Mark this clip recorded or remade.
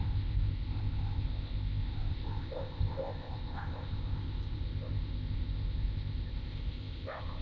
remade